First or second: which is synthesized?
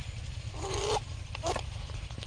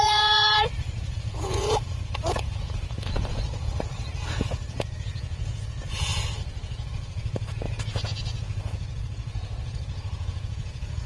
second